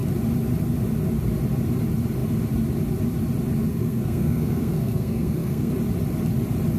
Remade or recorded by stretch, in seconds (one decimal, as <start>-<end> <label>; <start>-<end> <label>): 0.0-3.7 recorded; 3.7-5.7 remade; 5.7-6.8 recorded